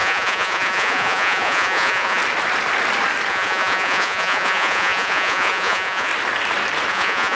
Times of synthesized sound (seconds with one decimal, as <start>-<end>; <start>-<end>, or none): 0.0-2.2; 3.3-6.1; 6.9-7.4